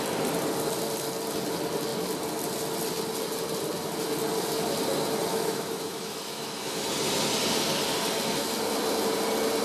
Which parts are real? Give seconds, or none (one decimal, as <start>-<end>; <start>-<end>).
0.0-5.3; 6.9-9.6